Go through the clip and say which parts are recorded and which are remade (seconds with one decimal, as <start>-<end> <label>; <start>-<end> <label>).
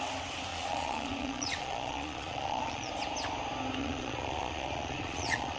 0.0-0.5 recorded; 0.5-2.9 remade; 2.9-3.8 recorded; 3.8-5.6 remade